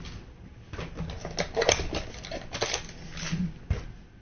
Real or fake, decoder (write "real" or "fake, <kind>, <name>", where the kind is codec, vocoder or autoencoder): real